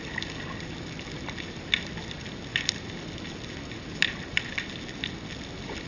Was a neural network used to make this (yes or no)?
no